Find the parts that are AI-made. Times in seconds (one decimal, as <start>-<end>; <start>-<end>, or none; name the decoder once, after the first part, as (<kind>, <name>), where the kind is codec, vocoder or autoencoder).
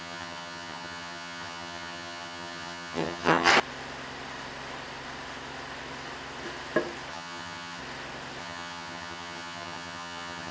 0.0-3.5 (vocoder, HiFi-GAN); 7.1-7.8; 8.4-10.5